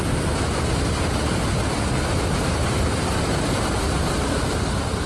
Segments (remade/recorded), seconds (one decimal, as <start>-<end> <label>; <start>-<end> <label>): 0.0-1.6 recorded; 1.6-5.1 remade